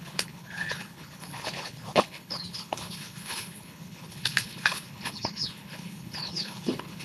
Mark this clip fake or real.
fake